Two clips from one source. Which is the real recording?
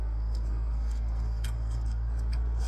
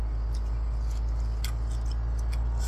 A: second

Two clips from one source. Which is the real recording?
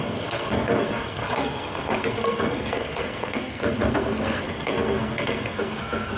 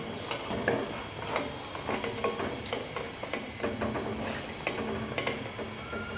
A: second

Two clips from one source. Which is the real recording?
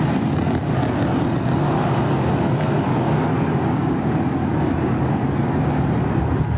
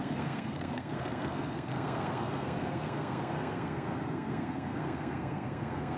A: first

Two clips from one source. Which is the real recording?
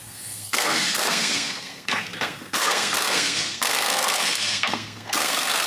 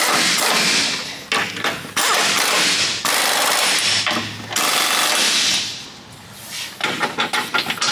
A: second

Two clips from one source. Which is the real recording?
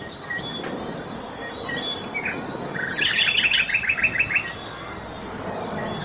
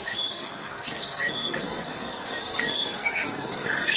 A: first